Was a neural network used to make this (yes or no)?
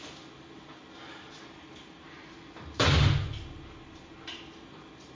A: no